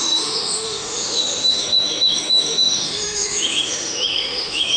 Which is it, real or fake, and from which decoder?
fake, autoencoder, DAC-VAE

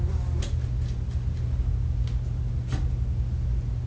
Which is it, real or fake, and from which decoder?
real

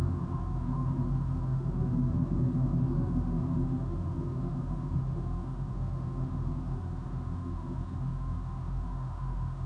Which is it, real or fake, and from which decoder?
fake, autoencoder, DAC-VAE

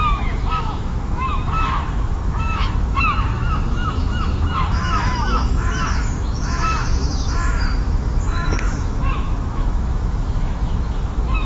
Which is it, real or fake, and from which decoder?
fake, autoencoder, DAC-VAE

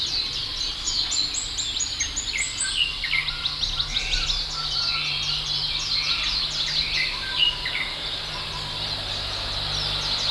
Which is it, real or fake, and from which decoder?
real